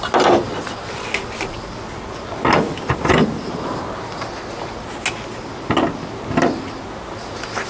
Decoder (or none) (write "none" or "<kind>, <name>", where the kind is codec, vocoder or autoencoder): none